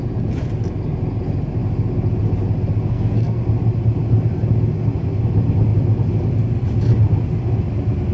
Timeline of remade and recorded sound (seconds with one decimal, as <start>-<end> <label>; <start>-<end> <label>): 0.0-2.8 recorded; 2.8-3.4 remade; 3.4-8.1 recorded